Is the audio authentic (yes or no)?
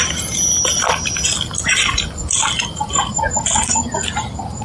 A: yes